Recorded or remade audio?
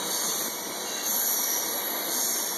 recorded